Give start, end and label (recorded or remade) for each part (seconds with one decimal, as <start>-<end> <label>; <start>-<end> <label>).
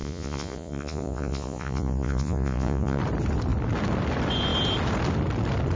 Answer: 0.0-3.0 remade; 3.0-5.8 recorded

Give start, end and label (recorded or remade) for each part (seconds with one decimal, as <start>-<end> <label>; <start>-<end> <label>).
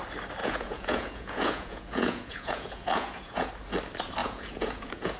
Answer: 0.0-0.4 recorded; 0.4-3.5 remade; 3.5-4.2 recorded; 4.2-5.2 remade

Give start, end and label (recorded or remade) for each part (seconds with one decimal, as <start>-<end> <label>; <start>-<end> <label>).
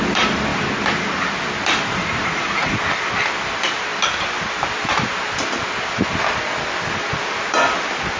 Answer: 0.0-2.0 recorded; 2.0-2.8 remade; 2.8-8.2 recorded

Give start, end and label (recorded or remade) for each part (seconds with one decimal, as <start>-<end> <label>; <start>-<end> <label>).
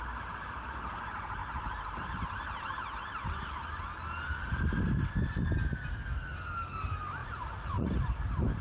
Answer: 0.0-7.2 recorded; 7.2-8.0 remade; 8.0-8.6 recorded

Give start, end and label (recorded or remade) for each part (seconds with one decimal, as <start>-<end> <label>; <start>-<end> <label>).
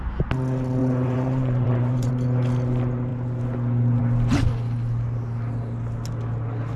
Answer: 0.0-0.8 recorded; 0.8-2.1 remade; 2.1-6.8 recorded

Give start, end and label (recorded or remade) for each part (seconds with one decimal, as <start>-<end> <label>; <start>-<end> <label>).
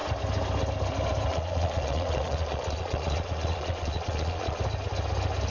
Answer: 0.0-1.3 recorded; 1.3-4.6 remade; 4.6-5.5 recorded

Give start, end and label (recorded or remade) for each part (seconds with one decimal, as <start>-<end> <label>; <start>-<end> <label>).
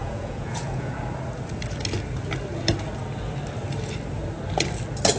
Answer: 0.0-1.0 remade; 1.0-5.2 recorded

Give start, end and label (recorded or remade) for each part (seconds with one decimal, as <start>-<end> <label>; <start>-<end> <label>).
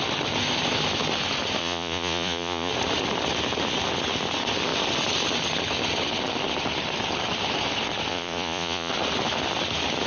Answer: 0.0-1.6 recorded; 1.6-2.7 remade; 2.7-8.1 recorded; 8.1-8.9 remade; 8.9-10.1 recorded